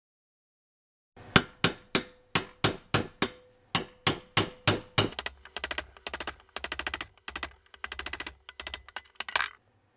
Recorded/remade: recorded